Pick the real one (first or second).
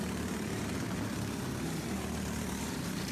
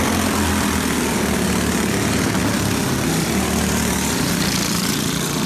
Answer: second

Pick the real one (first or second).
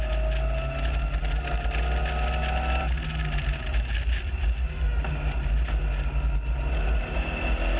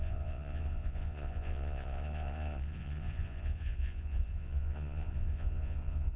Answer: first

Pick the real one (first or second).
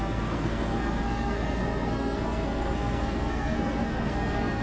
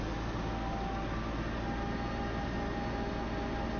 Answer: second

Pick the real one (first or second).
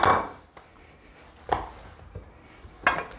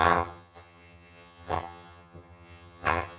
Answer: first